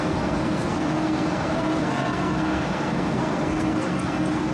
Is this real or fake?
fake